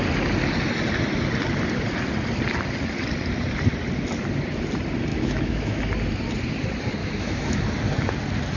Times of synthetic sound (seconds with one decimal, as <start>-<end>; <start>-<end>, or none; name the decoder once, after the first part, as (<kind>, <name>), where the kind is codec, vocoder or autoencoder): 5.1-5.8 (autoencoder, DAC-VAE); 7.0-7.6